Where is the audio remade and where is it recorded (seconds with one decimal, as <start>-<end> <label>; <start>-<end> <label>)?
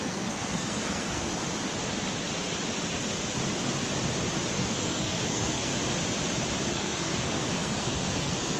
0.0-1.3 remade; 1.3-4.5 recorded; 4.5-5.7 remade; 5.7-6.7 recorded; 6.7-8.6 remade